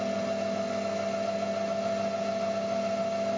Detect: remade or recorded recorded